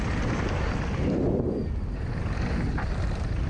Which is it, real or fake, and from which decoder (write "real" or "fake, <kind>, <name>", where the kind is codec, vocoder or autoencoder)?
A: real